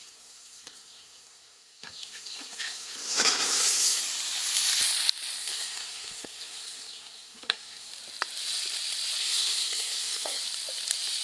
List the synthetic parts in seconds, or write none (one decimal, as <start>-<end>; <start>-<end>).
0.0-4.0; 5.4-7.9; 9.2-10.4